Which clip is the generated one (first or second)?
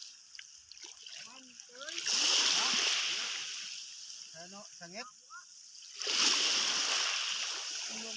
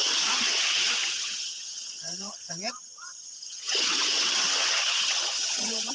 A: second